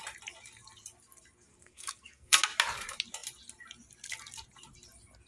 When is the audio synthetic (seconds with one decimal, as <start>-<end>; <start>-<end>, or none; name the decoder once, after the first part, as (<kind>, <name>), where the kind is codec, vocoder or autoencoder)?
1.5-2.4 (codec, SNAC)